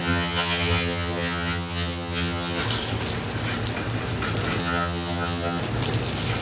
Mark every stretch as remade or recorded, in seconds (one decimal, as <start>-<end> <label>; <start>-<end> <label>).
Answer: 0.0-2.6 remade; 2.6-4.6 recorded; 4.6-5.6 remade; 5.6-6.4 recorded